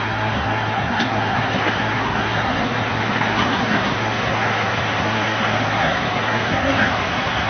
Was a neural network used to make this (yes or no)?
yes